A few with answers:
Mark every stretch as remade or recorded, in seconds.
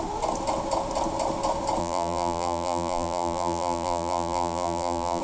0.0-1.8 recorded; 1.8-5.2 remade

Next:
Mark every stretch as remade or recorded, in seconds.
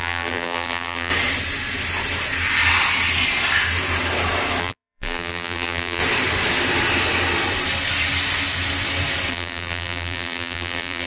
0.0-1.1 remade; 1.1-4.6 recorded; 4.6-6.0 remade; 6.0-9.3 recorded; 9.3-11.1 remade